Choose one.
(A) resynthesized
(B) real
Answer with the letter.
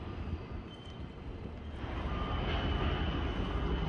B